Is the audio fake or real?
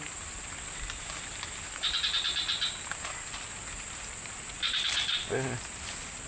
real